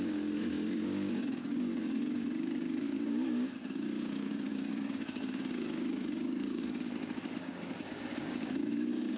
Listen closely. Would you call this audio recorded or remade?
remade